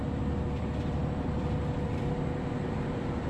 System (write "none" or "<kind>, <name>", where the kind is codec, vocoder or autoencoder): vocoder, BigVGAN v2